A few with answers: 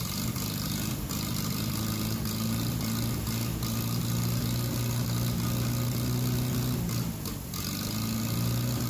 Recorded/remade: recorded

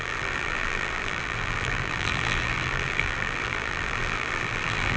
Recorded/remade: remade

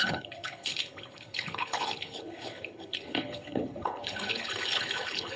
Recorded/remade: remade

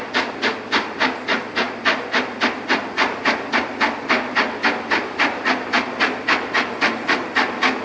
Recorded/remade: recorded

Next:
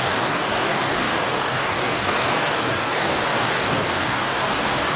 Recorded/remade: remade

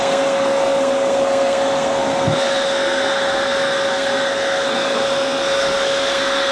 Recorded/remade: remade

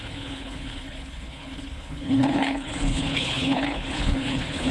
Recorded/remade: remade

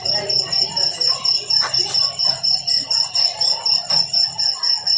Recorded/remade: recorded